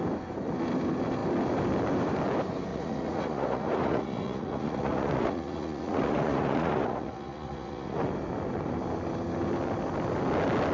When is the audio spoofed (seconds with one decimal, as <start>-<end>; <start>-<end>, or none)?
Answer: 2.7-8.0